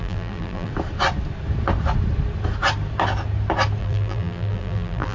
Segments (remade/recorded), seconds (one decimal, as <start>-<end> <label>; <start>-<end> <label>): 0.0-0.7 remade; 0.7-3.8 recorded; 3.8-5.1 remade